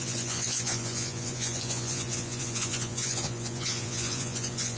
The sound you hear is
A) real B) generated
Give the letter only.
B